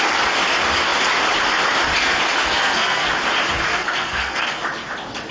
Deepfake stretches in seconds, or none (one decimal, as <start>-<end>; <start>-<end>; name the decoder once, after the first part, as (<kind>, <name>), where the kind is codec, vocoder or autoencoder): 2.0-3.1 (codec, SNAC); 3.7-4.6